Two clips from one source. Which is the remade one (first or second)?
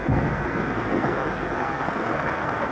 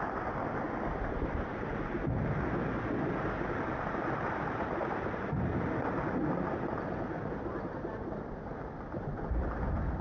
first